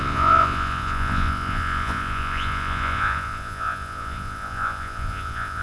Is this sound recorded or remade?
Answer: remade